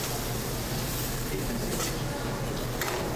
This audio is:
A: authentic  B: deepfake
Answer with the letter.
A